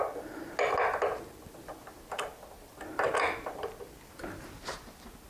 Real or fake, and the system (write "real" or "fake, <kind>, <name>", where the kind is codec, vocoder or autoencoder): real